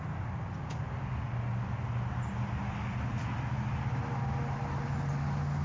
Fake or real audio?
real